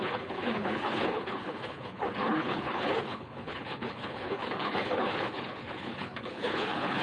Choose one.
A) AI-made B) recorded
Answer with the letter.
A